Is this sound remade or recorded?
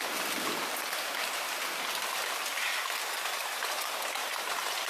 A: recorded